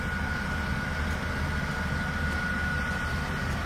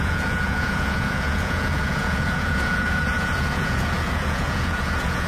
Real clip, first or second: first